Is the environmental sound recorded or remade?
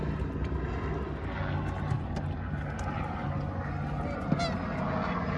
recorded